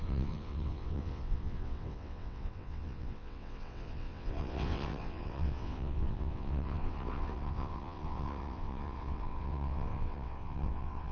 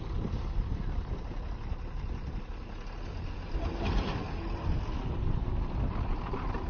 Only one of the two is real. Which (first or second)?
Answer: second